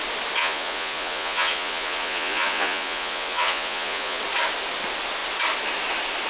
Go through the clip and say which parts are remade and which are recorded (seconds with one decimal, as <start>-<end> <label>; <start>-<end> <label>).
0.0-0.4 recorded; 0.4-4.2 remade; 4.2-6.3 recorded